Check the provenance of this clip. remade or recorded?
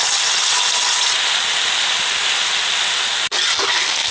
recorded